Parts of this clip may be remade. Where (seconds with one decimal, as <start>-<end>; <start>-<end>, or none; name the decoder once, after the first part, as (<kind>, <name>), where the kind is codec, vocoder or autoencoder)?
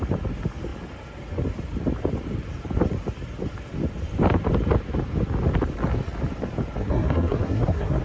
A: 6.8-8.0 (codec, SNAC)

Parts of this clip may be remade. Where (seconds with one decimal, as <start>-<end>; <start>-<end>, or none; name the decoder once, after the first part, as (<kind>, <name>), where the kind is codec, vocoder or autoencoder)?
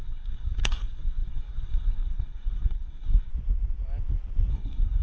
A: 0.0-3.3 (codec, SNAC); 4.5-5.0